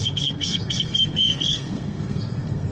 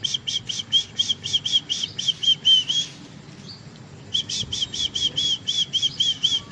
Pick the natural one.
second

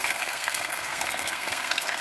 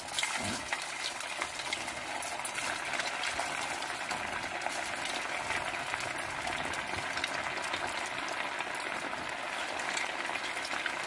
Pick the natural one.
second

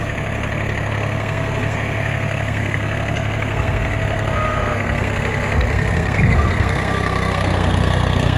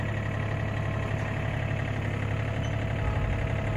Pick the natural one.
second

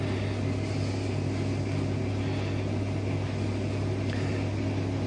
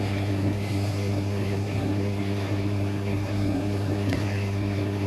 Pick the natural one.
first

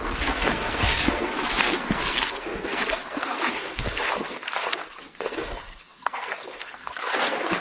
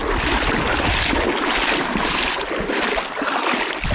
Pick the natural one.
second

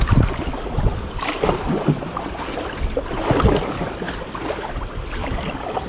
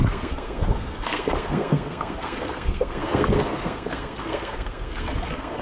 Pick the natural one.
first